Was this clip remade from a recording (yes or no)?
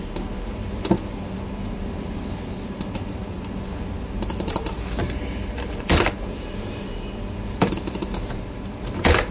yes